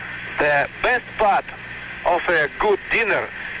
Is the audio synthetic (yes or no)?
no